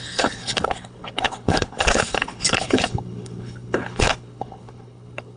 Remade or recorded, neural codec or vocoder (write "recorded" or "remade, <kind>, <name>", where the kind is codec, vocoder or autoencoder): remade, codec, HILCodec